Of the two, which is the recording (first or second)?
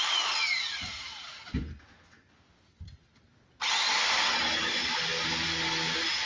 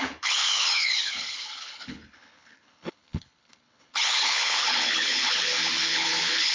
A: first